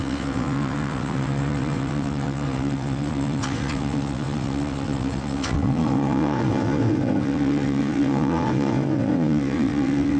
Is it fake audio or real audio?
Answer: fake